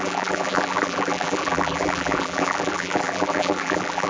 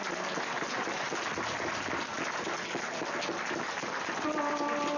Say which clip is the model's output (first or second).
first